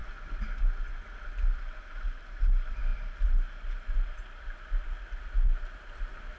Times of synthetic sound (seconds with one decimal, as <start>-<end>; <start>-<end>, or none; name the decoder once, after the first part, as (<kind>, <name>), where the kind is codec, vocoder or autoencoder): none